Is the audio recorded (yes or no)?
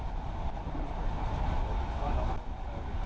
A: yes